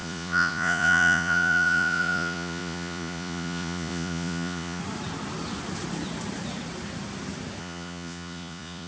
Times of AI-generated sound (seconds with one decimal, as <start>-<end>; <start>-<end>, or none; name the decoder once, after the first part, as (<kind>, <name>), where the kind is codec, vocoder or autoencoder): 0.0-4.8 (vocoder, Vocos); 7.6-8.9